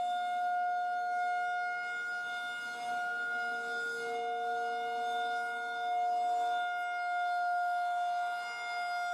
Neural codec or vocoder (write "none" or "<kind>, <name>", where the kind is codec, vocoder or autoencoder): none